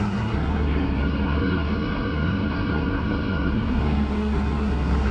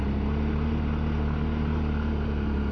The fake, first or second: first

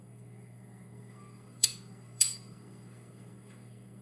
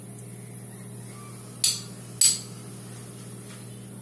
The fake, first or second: first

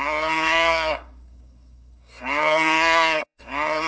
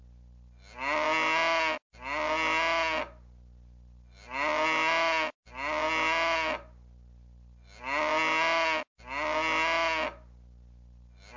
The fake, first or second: first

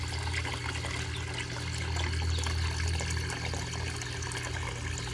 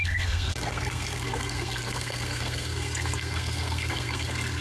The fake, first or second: second